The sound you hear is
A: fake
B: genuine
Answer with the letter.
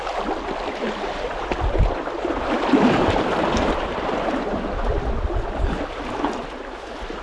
B